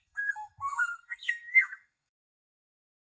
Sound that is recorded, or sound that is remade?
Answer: remade